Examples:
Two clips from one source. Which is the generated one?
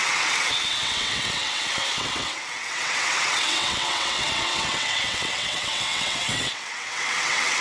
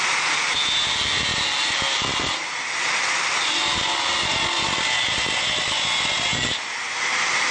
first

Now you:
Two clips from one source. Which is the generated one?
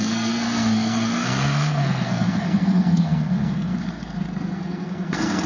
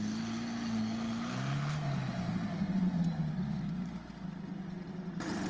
first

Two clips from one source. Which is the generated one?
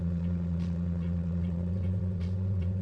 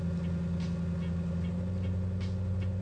first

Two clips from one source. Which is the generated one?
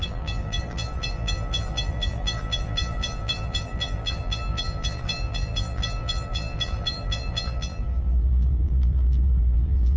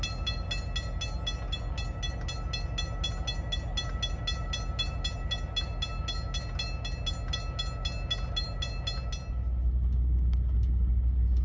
first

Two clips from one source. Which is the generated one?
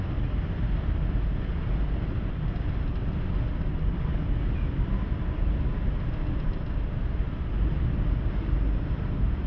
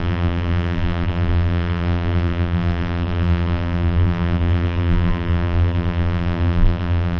second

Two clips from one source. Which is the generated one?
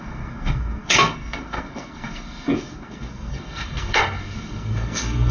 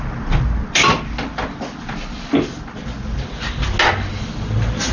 first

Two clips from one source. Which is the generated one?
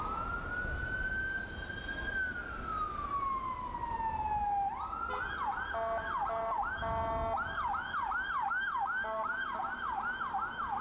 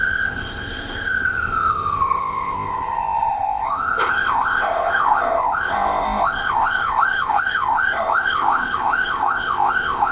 second